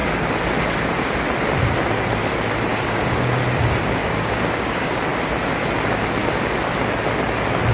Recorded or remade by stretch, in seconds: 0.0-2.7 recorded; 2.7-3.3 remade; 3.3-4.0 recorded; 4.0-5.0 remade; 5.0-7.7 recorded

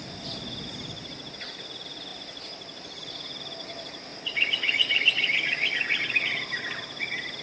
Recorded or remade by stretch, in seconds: 0.0-2.1 recorded; 2.1-3.1 remade; 3.1-4.1 recorded; 4.1-6.8 remade; 6.8-7.4 recorded

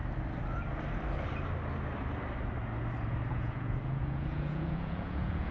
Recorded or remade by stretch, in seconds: 0.0-3.3 recorded; 3.3-5.5 remade

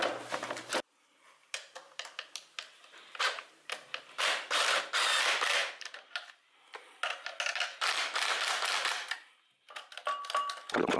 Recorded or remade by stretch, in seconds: 0.0-11.0 recorded

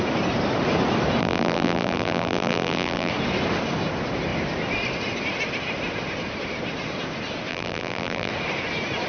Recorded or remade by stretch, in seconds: 0.0-1.2 recorded; 1.2-3.1 remade; 3.1-7.5 recorded; 7.5-8.3 remade; 8.3-9.1 recorded